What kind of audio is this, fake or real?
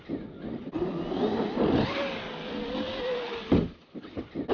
real